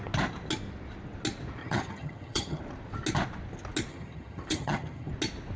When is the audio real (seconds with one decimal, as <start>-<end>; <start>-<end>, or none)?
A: 0.0-1.6; 2.6-3.9; 5.1-5.6